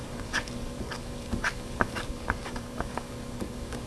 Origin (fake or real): fake